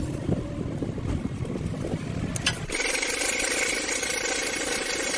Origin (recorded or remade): recorded